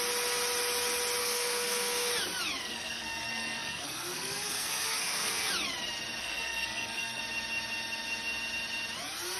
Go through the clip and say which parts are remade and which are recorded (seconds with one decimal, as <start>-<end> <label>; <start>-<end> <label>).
0.0-1.2 recorded; 1.2-2.1 remade; 2.1-2.6 recorded; 2.6-5.5 remade; 5.5-6.2 recorded; 6.2-7.2 remade; 7.2-9.4 recorded

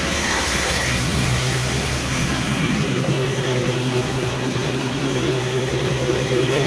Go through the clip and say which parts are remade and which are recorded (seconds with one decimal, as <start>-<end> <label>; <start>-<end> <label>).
0.0-6.7 remade

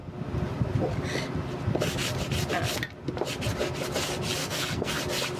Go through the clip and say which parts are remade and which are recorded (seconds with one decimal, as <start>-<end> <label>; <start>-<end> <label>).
0.0-4.4 recorded; 4.4-4.9 remade; 4.9-5.4 recorded

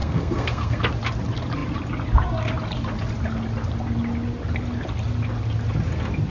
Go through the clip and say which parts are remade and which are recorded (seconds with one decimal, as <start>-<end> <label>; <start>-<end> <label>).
0.0-0.9 remade; 0.9-6.3 recorded

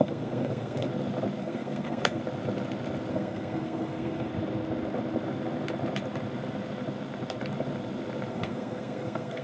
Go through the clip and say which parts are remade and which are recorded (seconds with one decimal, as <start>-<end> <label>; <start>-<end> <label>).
0.0-0.9 remade; 0.9-1.4 recorded; 1.4-2.2 remade; 2.2-3.1 recorded; 3.1-4.3 remade; 4.3-8.3 recorded; 8.3-9.4 remade

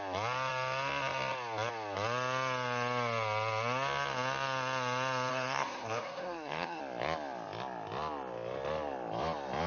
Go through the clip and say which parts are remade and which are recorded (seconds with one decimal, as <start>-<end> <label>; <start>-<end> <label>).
0.0-5.3 recorded; 5.3-6.8 remade; 6.8-9.7 recorded

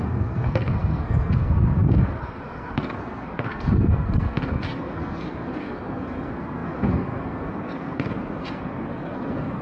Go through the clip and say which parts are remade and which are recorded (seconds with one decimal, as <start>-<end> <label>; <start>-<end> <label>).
0.0-9.6 remade